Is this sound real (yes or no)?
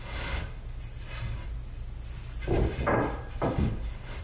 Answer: yes